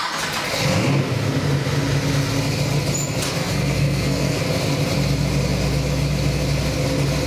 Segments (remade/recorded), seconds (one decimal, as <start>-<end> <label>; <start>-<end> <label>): 0.0-3.4 recorded; 3.4-4.4 remade; 4.4-7.3 recorded